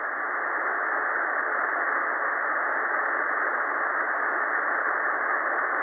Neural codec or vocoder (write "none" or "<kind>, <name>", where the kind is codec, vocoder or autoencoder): none